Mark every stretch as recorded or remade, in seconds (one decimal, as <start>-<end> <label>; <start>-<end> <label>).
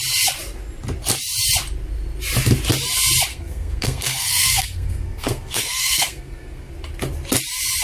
0.0-3.3 recorded; 3.3-6.7 remade; 6.7-7.8 recorded